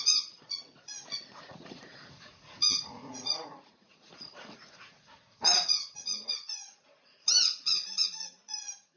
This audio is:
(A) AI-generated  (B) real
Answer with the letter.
A